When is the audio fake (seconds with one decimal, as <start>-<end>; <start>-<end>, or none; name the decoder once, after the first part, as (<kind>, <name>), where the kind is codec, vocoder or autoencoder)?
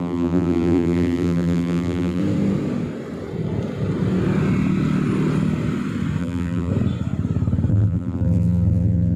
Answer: 0.0-2.2 (vocoder, BigVGAN v2); 6.2-6.7; 7.7-9.2